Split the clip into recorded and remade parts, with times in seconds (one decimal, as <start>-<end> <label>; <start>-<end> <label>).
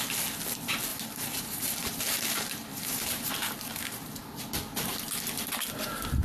0.0-0.9 recorded; 0.9-4.4 remade; 4.4-6.2 recorded